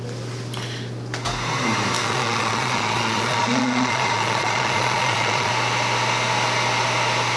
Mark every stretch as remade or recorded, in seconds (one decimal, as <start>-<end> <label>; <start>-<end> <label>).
0.0-2.0 recorded; 2.0-5.5 remade; 5.5-7.4 recorded